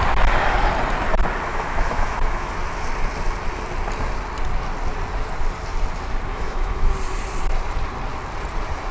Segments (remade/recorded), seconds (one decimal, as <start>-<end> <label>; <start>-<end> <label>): 0.0-1.5 recorded; 1.5-2.5 remade; 2.5-6.3 recorded; 6.3-6.9 remade; 6.9-8.9 recorded